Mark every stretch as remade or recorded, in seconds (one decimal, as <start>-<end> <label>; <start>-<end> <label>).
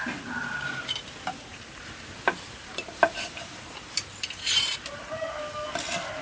0.0-1.5 recorded; 1.5-5.2 remade; 5.2-6.2 recorded